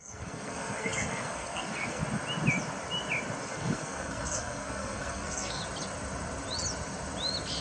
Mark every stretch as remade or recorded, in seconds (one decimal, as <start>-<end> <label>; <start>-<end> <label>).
0.0-2.0 remade; 2.0-3.4 recorded; 3.4-5.6 remade; 5.6-7.6 recorded

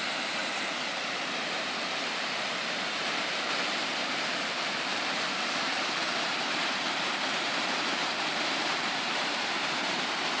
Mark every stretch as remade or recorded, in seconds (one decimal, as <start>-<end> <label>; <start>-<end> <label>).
0.0-10.4 remade